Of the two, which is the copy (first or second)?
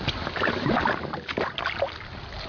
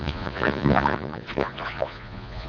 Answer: second